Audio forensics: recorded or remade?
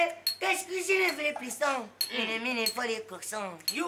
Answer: recorded